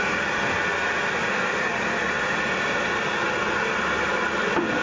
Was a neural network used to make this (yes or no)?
no